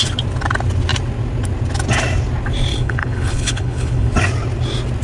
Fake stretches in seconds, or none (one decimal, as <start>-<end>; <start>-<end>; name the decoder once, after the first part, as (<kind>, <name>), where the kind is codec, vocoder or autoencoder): 2.7-4.1 (codec, HILCodec)